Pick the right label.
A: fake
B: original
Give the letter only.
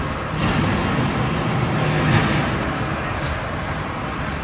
B